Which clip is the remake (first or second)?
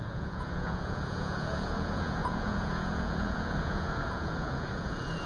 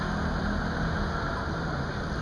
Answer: first